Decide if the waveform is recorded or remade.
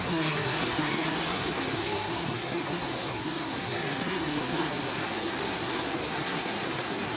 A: remade